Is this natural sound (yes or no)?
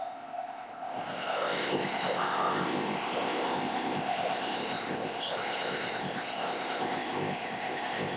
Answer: no